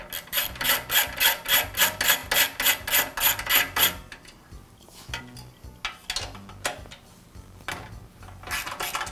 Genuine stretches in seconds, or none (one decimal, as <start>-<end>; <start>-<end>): 0.0-9.1